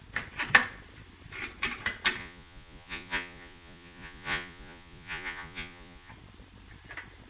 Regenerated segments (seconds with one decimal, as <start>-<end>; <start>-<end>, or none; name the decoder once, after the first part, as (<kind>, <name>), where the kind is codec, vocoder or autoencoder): 2.2-6.1 (vocoder, Vocos)